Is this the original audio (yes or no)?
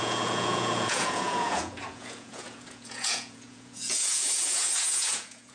no